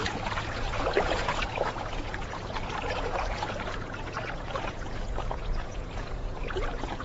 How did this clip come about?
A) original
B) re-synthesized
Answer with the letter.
B